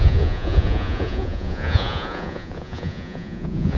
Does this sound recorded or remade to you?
remade